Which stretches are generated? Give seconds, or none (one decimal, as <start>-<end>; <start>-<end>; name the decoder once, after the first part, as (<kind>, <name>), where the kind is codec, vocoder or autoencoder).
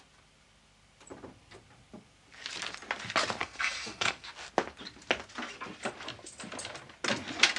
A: 3.4-4.3 (codec, SNAC)